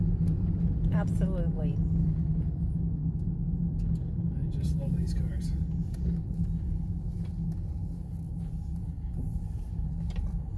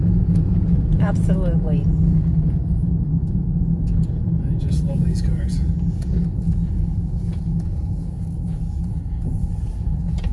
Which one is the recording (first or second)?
first